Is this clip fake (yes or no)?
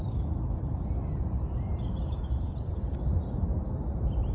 no